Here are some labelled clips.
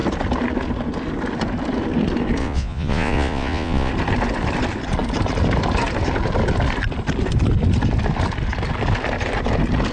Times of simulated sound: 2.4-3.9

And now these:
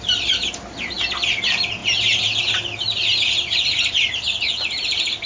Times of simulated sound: none

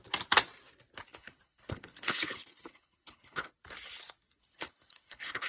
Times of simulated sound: 1.1-3.5; 4.4-5.5

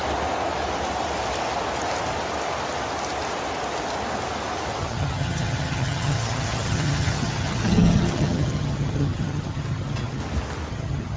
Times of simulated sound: 4.8-10.2; 10.7-11.2